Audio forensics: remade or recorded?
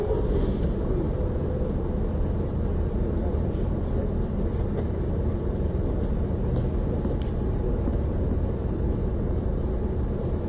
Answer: recorded